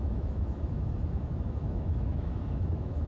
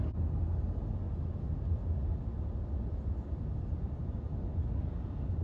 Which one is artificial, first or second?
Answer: first